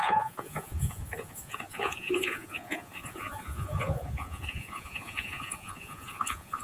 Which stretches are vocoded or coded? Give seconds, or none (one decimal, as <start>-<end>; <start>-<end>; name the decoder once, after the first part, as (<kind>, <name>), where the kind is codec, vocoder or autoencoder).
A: 0.0-6.6 (vocoder, Vocos)